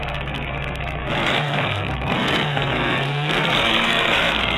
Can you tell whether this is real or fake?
fake